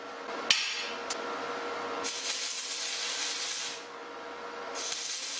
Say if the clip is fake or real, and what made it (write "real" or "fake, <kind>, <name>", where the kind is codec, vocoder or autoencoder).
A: real